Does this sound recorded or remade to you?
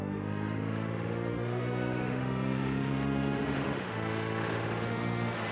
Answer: remade